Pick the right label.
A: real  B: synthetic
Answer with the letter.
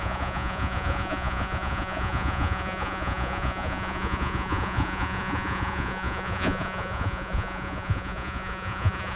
B